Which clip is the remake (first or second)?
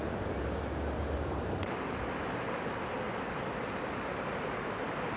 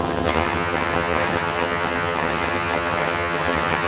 second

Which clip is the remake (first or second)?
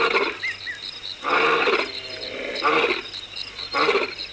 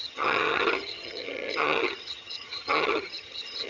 second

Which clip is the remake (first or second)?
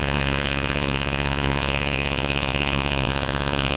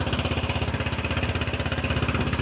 first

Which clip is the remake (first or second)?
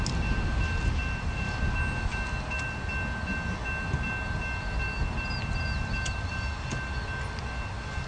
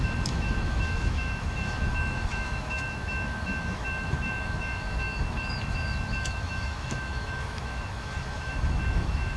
second